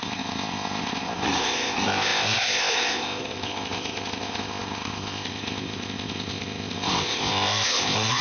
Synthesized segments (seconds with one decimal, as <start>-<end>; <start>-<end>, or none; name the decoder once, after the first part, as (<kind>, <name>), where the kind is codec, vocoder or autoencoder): 0.0-8.2 (codec, ZipCodec)